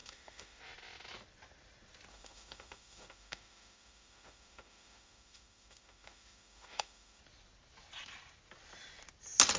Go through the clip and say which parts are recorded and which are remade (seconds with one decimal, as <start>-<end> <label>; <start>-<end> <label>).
0.0-0.6 remade; 0.6-2.1 recorded; 2.1-7.2 remade; 7.2-9.6 recorded